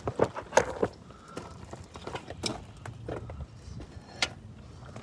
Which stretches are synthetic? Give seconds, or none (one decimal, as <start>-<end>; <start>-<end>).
none